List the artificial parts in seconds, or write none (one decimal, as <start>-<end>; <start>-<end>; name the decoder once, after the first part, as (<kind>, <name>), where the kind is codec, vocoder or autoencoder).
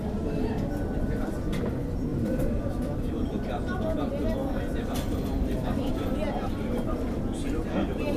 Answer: 2.1-3.1 (vocoder, BigVGAN v2); 4.4-5.9